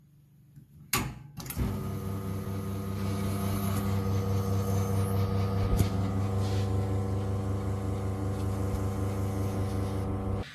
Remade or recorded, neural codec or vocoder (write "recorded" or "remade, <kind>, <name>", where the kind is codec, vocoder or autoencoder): recorded